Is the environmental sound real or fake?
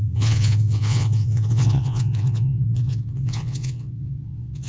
fake